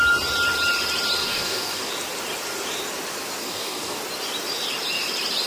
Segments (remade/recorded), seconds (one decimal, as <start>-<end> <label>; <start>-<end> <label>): 0.0-1.2 recorded; 1.2-1.9 remade; 1.9-3.4 recorded; 3.4-4.0 remade; 4.0-5.5 recorded